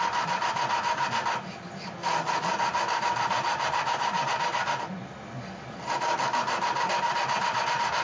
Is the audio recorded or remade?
recorded